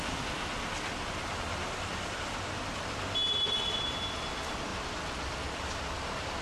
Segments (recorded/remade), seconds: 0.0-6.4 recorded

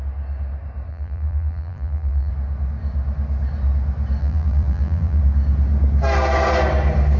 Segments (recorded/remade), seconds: 0.0-0.9 recorded; 0.9-2.3 remade; 2.3-4.2 recorded; 4.2-5.2 remade; 5.2-7.2 recorded

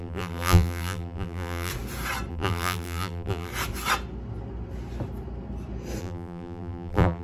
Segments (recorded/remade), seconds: 0.0-1.7 remade; 1.7-2.3 recorded; 2.3-3.5 remade; 3.5-6.0 recorded; 6.0-7.2 remade

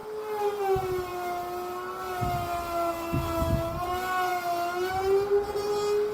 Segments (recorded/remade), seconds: 0.0-6.1 recorded